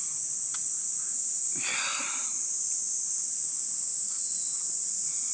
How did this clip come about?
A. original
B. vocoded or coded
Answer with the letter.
A